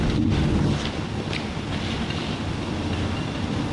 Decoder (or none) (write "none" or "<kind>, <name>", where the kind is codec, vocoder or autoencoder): none